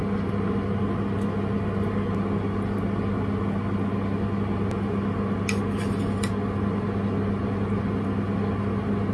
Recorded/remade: recorded